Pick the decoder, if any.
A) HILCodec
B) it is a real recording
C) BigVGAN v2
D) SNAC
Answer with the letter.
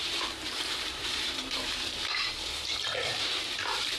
C